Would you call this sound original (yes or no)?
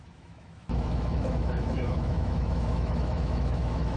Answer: no